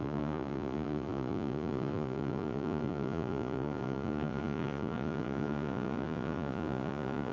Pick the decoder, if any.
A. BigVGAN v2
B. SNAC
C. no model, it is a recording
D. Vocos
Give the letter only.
D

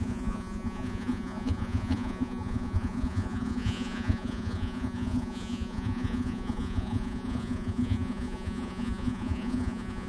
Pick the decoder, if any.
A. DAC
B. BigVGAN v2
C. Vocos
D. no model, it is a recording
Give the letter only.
C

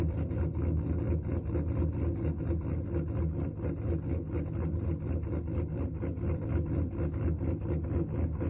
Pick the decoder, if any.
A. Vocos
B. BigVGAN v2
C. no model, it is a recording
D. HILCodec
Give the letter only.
C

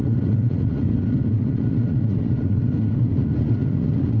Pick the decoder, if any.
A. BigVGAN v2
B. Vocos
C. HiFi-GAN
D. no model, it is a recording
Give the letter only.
B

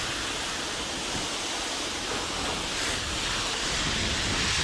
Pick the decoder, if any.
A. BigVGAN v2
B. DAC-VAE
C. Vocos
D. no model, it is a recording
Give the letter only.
D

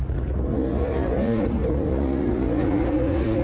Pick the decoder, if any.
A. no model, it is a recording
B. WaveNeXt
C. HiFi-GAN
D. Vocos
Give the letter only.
D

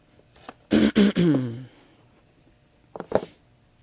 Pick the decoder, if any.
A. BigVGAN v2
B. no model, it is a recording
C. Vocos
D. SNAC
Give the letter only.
B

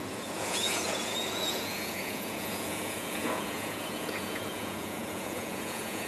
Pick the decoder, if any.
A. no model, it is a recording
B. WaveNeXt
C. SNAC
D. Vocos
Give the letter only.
D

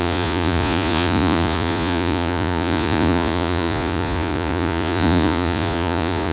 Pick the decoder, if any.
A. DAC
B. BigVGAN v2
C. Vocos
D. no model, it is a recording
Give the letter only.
C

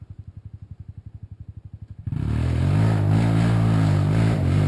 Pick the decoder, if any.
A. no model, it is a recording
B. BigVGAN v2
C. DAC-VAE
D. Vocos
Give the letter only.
A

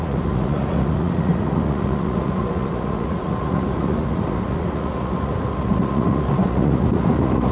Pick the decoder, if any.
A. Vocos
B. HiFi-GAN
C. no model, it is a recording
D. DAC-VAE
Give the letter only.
A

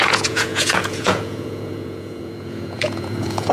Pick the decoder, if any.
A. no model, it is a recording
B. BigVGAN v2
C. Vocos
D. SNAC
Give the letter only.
C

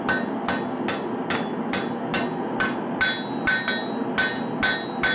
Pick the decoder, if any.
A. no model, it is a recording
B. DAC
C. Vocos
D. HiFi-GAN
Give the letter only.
A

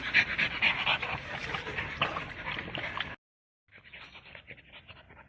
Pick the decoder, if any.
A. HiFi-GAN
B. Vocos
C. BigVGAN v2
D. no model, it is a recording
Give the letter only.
D